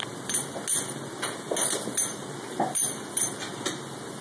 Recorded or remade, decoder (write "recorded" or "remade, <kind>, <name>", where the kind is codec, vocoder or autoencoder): recorded